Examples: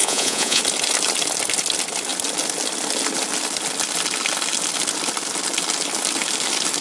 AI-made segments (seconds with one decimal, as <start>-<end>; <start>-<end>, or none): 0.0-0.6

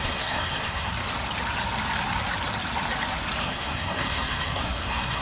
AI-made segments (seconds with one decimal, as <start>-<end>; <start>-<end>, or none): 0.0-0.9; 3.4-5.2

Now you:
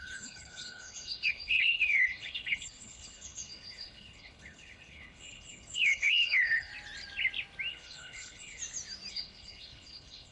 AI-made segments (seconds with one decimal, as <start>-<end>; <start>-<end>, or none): 0.0-6.7; 7.7-8.6; 9.1-10.3

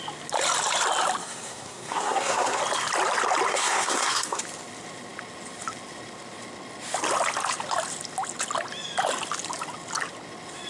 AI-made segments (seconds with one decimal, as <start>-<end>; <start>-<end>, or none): 1.2-2.6; 3.5-4.4

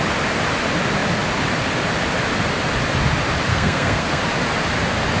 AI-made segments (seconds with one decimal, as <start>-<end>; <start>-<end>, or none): 3.5-4.2

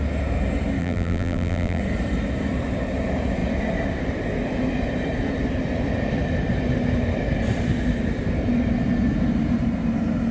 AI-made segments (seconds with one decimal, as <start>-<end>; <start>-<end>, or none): 0.8-1.8